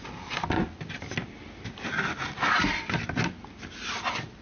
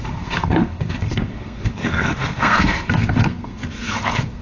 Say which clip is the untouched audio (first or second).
first